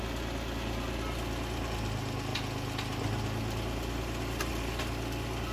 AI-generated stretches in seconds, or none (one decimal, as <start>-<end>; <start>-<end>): none